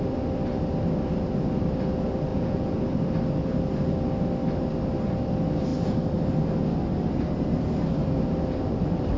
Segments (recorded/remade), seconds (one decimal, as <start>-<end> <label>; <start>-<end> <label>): 0.0-2.3 recorded; 2.3-2.8 remade; 2.8-9.2 recorded